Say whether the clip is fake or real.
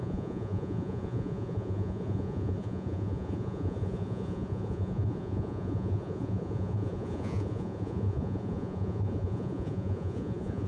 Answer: fake